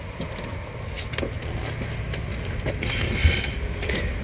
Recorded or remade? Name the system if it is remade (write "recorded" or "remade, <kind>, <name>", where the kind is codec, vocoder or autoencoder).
recorded